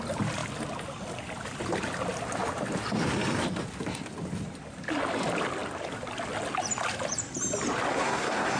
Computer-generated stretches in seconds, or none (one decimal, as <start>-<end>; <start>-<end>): 7.9-8.6